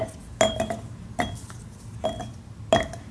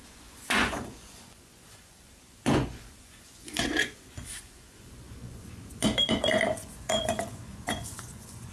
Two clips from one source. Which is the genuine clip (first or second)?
first